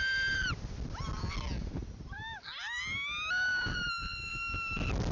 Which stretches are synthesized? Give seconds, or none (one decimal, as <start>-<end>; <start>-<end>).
1.8-2.8; 3.5-4.4